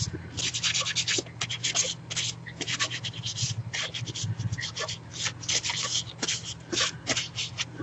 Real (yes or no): yes